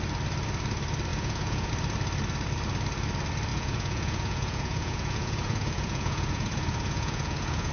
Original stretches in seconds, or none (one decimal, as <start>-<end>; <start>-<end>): 0.0-1.1; 1.7-3.5